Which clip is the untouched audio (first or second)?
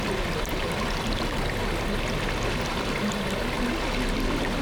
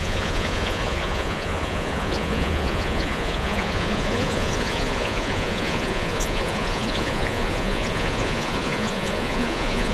first